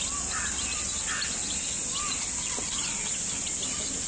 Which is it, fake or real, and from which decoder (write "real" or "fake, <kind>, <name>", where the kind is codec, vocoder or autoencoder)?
real